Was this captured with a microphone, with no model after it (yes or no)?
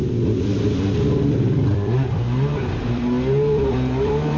no